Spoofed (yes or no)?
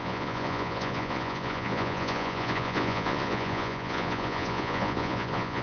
yes